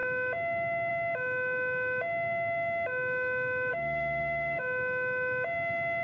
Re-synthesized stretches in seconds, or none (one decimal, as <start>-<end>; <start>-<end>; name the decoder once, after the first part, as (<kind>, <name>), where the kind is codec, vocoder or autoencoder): 3.7-4.6 (autoencoder, DAC-VAE)